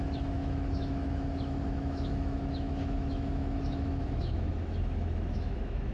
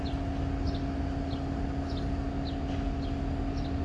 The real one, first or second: second